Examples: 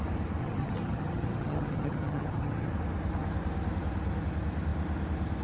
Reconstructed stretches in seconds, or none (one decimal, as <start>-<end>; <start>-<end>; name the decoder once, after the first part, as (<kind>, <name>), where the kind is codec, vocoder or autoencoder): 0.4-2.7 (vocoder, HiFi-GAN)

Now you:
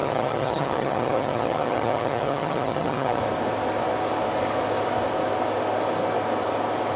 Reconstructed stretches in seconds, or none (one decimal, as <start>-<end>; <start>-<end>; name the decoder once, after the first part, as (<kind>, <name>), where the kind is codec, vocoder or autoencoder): 0.0-3.2 (vocoder, HiFi-GAN)

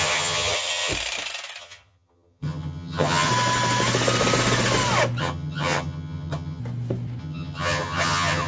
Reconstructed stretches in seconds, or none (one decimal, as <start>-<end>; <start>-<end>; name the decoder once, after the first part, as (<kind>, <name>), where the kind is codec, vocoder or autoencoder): 0.0-0.9 (vocoder, HiFi-GAN); 1.6-3.3; 5.2-6.6; 7.2-8.5